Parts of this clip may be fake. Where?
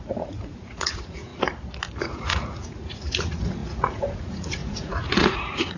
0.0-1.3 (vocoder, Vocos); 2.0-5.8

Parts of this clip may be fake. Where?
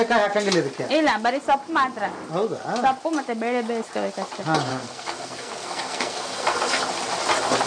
4.7-6.8 (codec, SNAC)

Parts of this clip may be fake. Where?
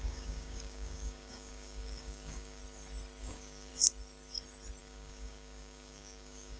0.0-2.6 (codec, DAC); 3.2-3.7; 4.8-6.6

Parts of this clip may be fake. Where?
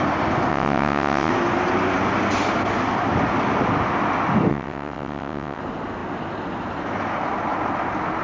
0.5-1.3 (vocoder, WaveNeXt); 4.5-5.6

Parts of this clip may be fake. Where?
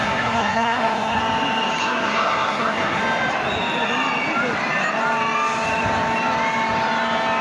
0.0-1.2 (codec, SNAC); 1.8-3.0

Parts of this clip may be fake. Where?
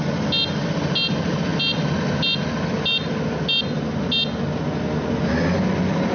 none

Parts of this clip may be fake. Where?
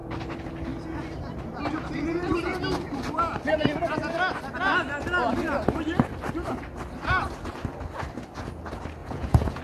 9.0-9.6 (vocoder, Vocos)